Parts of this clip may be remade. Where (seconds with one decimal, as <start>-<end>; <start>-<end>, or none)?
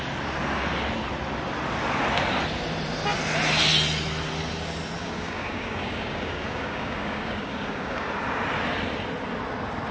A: 5.0-8.1